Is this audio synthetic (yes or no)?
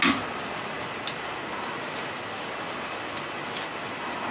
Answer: no